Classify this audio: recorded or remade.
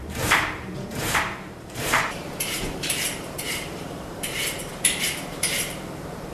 remade